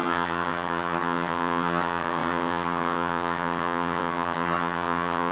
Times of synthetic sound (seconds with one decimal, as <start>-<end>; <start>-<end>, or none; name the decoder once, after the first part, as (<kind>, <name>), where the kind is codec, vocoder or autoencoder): 0.0-5.3 (vocoder, HiFi-GAN)